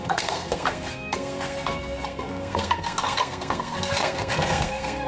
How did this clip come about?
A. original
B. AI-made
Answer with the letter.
B